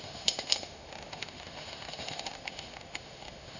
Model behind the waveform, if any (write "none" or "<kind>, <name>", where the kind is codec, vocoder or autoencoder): autoencoder, DAC-VAE